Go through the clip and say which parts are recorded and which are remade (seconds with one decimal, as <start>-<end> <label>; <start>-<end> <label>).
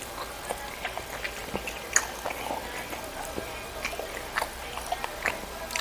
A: 0.0-5.8 recorded